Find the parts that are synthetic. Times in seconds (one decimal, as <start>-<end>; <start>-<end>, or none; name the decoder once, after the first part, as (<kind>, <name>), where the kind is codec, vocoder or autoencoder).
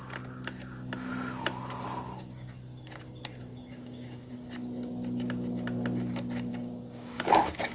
3.5-4.3 (codec, DAC); 6.5-7.7